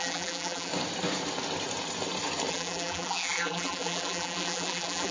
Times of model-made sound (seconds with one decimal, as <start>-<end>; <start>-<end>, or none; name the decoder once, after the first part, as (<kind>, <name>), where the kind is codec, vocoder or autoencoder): 0.0-0.7 (vocoder, BigVGAN v2); 2.5-5.1